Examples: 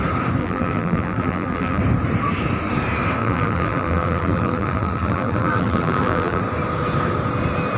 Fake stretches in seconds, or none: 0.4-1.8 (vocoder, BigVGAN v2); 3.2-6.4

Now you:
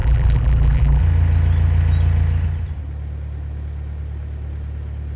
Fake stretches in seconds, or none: 0.0-1.0 (vocoder, BigVGAN v2)

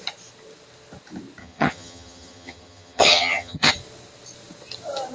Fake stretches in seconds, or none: 1.4-3.7 (vocoder, HiFi-GAN)